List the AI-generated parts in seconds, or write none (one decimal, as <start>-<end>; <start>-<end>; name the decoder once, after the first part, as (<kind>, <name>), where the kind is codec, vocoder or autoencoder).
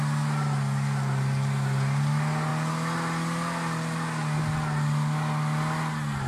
none